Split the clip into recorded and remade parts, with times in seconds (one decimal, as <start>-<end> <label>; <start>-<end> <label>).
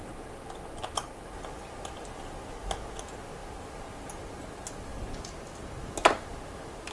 0.0-6.9 recorded